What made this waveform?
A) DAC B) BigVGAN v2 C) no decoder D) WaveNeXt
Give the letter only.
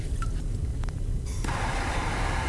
B